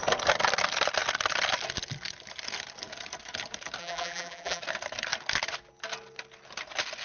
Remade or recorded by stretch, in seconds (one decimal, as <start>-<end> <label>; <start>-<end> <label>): 0.0-3.8 recorded; 3.8-4.6 remade; 4.6-7.0 recorded